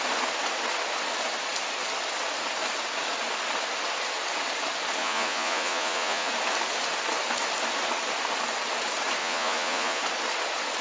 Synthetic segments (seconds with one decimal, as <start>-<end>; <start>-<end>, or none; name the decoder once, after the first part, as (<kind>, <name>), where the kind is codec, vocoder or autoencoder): 5.0-6.3 (vocoder, Vocos); 9.2-10.0